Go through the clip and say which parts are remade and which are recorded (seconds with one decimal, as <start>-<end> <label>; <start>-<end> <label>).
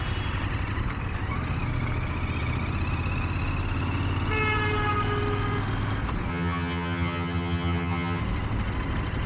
0.0-6.3 recorded; 6.3-8.2 remade; 8.2-9.3 recorded